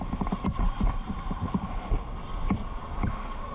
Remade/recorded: recorded